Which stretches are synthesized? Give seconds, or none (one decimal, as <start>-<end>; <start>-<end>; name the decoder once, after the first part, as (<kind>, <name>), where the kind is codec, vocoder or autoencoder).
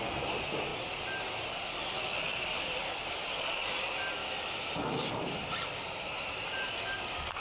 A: none